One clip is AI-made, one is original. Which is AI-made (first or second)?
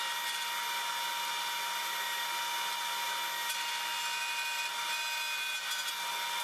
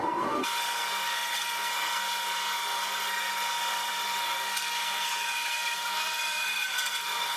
second